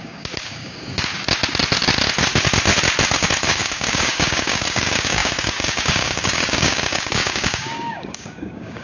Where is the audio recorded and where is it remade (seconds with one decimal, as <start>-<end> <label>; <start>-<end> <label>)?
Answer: 0.0-1.1 remade; 1.1-3.4 recorded; 3.4-8.8 remade